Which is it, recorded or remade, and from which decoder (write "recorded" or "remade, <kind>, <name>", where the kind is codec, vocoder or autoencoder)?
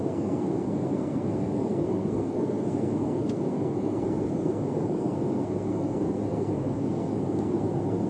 remade, codec, SNAC